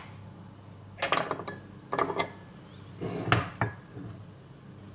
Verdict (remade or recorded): recorded